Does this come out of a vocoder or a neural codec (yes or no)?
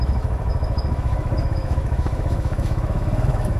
yes